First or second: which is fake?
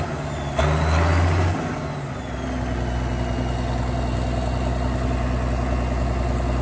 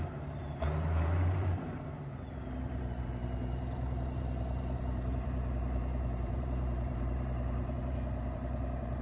second